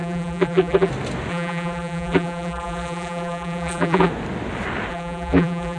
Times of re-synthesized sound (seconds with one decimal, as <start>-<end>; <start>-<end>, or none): 0.0-0.9; 1.3-4.1; 4.9-5.8